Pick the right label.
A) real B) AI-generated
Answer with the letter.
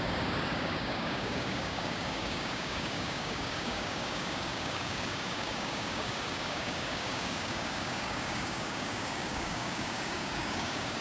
B